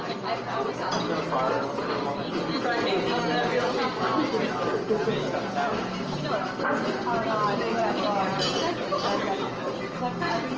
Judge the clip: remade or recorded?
recorded